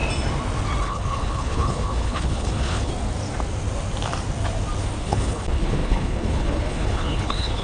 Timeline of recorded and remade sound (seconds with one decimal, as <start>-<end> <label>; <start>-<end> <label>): 0.0-0.8 recorded; 0.8-2.9 remade; 2.9-5.0 recorded; 5.0-7.6 remade